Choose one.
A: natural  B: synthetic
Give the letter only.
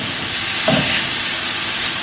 A